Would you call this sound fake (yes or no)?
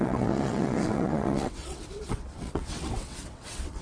yes